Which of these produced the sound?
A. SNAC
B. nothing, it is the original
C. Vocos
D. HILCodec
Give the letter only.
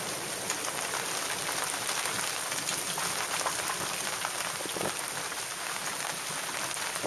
B